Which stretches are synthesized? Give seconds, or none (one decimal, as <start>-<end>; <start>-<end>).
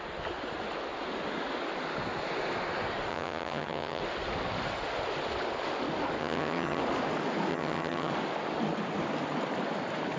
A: 3.1-4.0; 6.2-6.8; 7.5-8.1